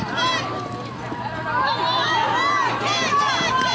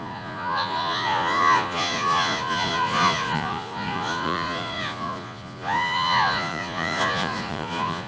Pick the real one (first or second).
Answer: first